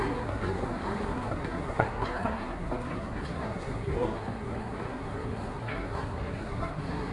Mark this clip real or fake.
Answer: fake